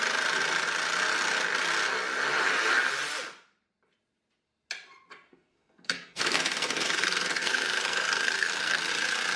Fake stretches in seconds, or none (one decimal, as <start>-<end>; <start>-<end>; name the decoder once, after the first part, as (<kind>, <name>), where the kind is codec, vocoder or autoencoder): 5.3-8.9 (codec, SNAC)